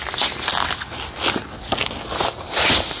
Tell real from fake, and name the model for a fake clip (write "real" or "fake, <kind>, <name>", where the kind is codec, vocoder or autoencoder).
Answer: real